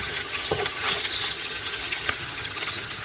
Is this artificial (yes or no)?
yes